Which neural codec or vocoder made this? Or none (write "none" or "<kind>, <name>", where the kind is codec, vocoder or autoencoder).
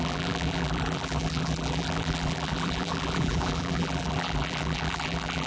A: vocoder, BigVGAN v2